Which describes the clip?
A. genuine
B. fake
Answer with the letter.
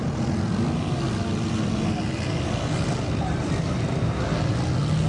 A